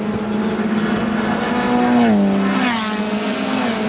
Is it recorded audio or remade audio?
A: recorded